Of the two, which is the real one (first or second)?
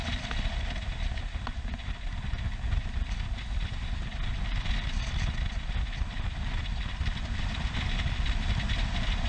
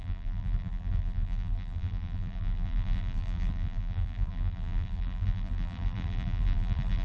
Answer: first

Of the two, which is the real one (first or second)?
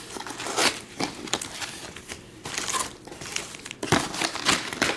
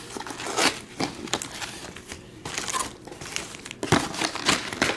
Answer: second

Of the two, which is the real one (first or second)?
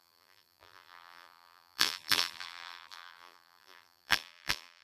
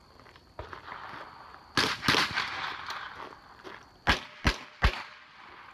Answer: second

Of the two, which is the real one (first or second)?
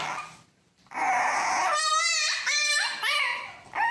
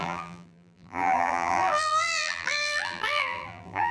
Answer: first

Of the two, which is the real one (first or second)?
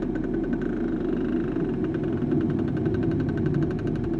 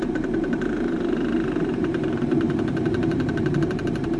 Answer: first